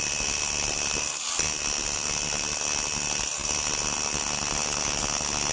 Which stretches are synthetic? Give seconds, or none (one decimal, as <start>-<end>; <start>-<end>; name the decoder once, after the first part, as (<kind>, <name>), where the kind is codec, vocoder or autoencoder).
none